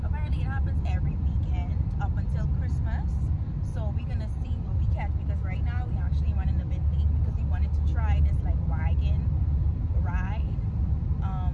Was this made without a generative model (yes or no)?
yes